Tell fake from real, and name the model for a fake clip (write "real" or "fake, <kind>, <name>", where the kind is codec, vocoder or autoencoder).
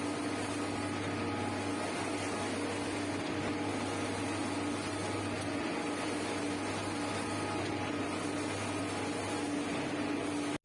real